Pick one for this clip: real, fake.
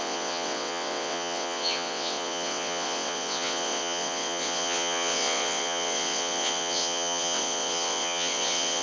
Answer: fake